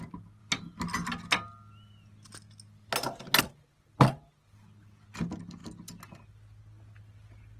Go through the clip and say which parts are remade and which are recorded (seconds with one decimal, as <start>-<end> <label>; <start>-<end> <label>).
0.0-7.6 recorded